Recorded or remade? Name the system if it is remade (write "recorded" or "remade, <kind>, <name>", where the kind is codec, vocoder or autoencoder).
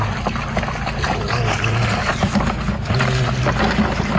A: recorded